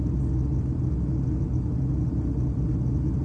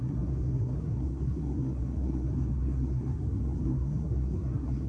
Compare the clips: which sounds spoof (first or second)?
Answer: second